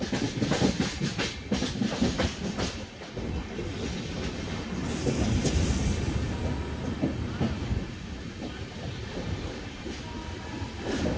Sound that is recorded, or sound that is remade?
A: recorded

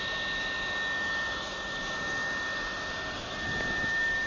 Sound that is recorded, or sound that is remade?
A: recorded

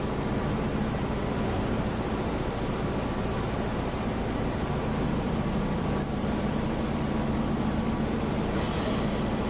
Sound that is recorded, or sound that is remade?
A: recorded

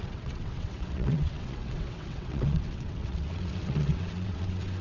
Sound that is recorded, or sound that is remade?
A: remade